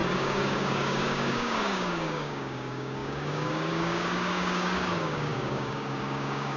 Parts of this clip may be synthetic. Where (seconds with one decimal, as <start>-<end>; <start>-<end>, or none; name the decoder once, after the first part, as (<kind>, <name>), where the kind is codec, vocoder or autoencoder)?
0.0-6.6 (codec, DAC)